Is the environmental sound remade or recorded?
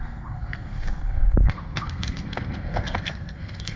remade